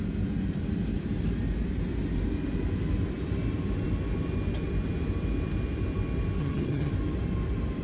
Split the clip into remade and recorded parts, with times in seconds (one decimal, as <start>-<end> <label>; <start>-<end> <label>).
0.0-6.4 recorded; 6.4-6.9 remade; 6.9-7.8 recorded